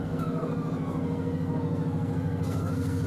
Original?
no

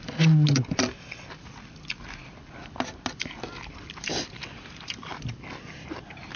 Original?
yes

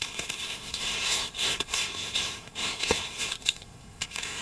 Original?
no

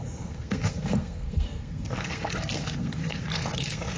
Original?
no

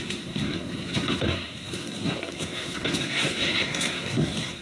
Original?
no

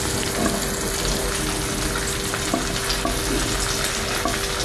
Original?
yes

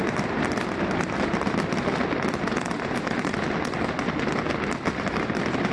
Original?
yes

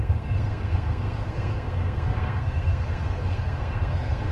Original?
no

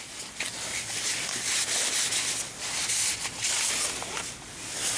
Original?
yes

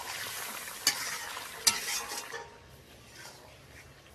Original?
yes